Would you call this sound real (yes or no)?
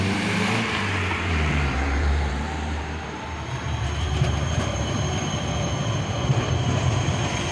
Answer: no